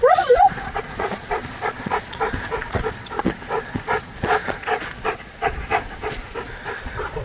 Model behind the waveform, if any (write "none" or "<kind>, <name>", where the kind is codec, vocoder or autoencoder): vocoder, Vocos